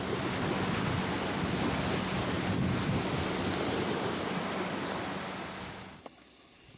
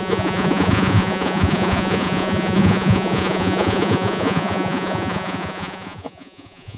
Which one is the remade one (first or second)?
second